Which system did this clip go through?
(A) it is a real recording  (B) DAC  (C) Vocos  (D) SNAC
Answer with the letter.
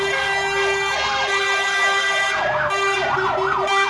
A